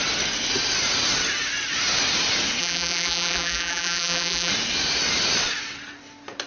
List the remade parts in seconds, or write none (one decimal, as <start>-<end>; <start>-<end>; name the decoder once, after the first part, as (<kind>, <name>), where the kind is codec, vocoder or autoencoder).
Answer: 2.6-4.5 (vocoder, BigVGAN v2)